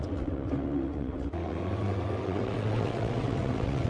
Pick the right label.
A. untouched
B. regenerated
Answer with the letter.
B